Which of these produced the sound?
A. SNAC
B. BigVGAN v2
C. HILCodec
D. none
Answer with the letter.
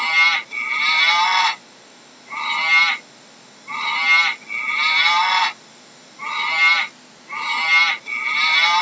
D